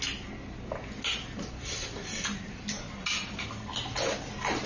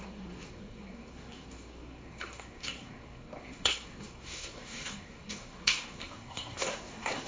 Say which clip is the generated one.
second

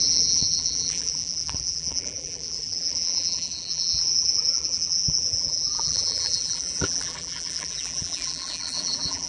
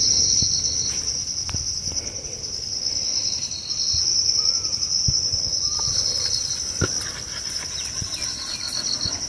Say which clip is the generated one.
first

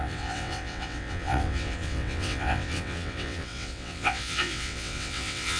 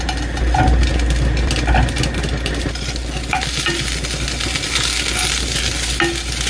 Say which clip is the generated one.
first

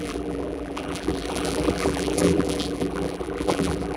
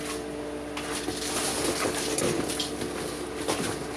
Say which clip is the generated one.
first